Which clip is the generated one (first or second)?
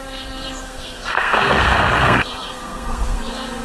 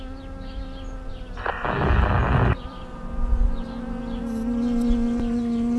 first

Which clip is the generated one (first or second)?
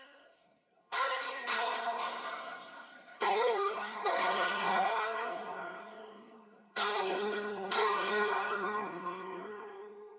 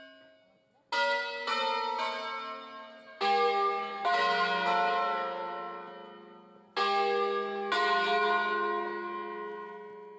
first